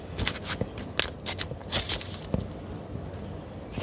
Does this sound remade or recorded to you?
recorded